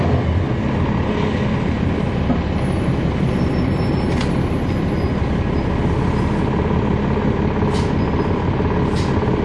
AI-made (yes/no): no